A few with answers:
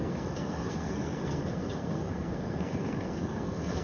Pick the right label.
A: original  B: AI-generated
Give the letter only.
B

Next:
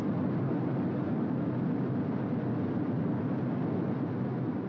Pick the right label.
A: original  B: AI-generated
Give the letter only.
A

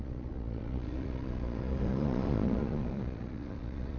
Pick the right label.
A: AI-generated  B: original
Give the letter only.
A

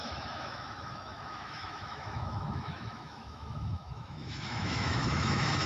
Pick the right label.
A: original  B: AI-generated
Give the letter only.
B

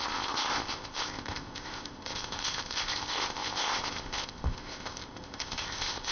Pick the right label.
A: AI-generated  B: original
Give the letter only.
A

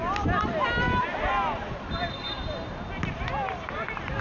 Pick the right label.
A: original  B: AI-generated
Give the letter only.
A